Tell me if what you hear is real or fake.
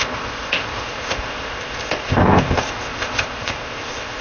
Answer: fake